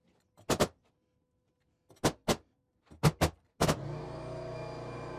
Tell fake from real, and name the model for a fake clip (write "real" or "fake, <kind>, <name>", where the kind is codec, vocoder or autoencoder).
real